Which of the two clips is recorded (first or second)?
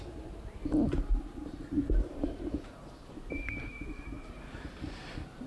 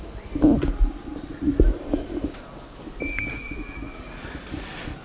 second